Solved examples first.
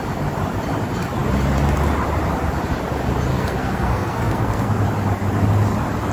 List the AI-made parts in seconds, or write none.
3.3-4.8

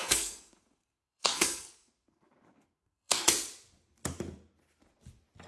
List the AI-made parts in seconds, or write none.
0.0-3.3

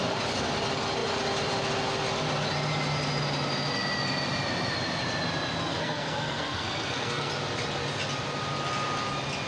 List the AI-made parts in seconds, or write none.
5.7-7.3

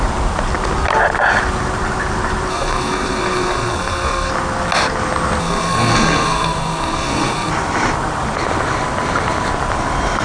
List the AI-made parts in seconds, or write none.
2.5-4.3; 5.4-7.5

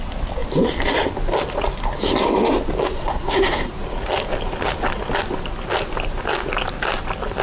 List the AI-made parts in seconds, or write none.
2.9-3.7

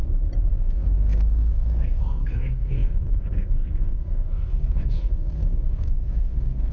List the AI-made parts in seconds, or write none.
0.5-6.7